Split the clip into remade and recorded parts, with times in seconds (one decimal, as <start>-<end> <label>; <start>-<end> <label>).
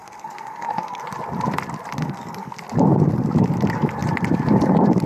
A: 0.0-1.0 remade; 1.0-2.0 recorded; 2.0-2.5 remade; 2.5-5.1 recorded